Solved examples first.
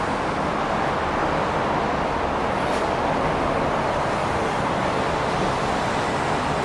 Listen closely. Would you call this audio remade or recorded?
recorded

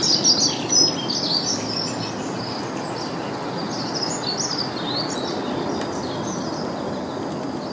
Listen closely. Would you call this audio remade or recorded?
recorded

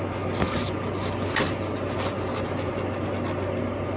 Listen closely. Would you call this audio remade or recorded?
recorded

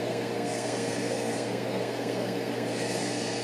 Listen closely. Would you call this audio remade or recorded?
remade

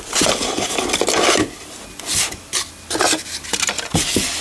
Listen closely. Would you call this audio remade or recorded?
recorded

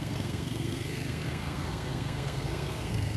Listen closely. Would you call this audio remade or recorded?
remade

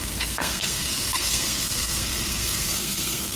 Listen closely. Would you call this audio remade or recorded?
remade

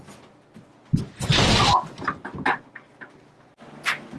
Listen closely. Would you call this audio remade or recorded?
recorded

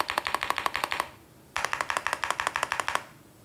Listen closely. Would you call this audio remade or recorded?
recorded